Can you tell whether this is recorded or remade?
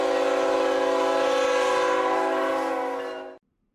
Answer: recorded